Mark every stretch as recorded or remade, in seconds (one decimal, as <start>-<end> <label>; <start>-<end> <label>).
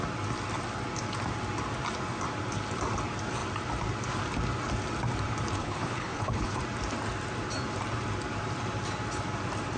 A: 0.0-5.6 recorded; 5.6-6.6 remade; 6.6-9.8 recorded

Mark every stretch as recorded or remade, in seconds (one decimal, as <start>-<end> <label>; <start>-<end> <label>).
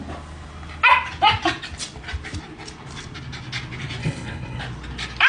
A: 0.0-4.0 recorded; 4.0-4.6 remade; 4.6-5.3 recorded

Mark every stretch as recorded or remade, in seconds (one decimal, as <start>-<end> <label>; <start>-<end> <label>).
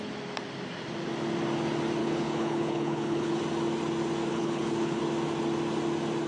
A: 0.0-2.0 recorded; 2.0-3.4 remade; 3.4-4.3 recorded; 4.3-5.0 remade; 5.0-6.3 recorded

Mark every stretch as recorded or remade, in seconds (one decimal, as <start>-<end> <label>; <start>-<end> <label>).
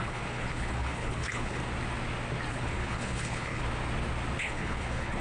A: 0.0-1.6 remade; 1.6-2.5 recorded; 2.5-3.6 remade; 3.6-4.4 recorded; 4.4-5.2 remade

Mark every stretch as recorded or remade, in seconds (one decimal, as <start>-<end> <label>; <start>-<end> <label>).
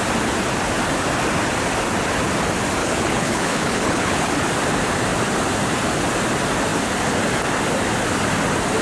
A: 0.0-2.8 recorded; 2.8-4.3 remade; 4.3-8.8 recorded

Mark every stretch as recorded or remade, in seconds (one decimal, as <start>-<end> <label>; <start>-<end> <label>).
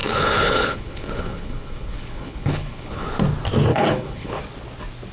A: 0.0-3.1 remade; 3.1-3.7 recorded; 3.7-4.4 remade; 4.4-5.1 recorded